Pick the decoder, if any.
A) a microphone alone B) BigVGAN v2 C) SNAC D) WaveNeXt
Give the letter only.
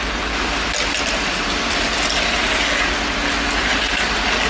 A